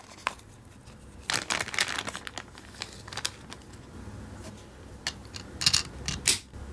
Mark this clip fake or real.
real